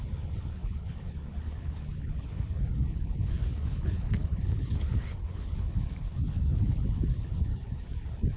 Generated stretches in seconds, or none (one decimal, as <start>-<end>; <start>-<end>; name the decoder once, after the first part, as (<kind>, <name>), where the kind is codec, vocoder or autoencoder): 0.0-8.4 (codec, HILCodec)